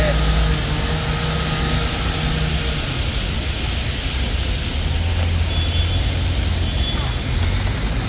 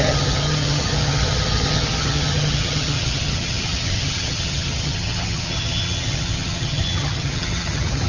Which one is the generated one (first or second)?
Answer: second